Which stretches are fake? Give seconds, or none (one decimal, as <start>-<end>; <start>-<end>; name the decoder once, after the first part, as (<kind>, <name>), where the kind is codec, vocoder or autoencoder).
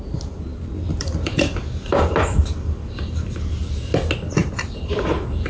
0.5-3.4 (vocoder, BigVGAN v2); 4.4-5.5